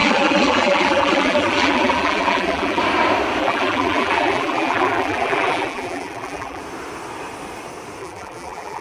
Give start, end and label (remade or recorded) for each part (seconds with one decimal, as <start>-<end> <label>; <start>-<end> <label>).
0.0-2.8 remade; 2.8-3.4 recorded; 3.4-6.6 remade; 6.6-8.0 recorded; 8.0-8.8 remade